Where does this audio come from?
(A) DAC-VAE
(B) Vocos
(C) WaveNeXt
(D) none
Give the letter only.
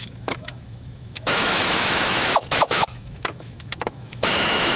A